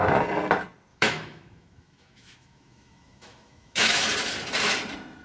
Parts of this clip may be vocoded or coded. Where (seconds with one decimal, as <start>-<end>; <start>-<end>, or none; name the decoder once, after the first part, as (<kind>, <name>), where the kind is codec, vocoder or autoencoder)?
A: 0.9-4.0 (autoencoder, DAC-VAE)